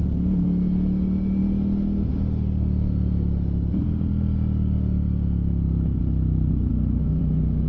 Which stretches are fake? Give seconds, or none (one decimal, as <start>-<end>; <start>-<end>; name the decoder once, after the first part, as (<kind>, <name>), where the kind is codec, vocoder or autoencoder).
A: 6.7-7.2 (codec, SNAC)